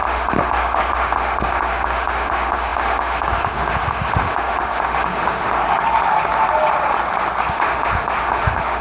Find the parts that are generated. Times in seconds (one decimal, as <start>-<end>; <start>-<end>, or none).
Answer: 0.0-5.6; 7.5-8.8